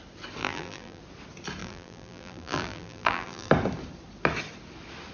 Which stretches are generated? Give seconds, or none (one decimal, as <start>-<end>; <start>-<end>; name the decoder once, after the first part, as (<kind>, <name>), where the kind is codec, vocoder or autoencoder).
0.4-1.0 (vocoder, BigVGAN v2); 1.6-3.5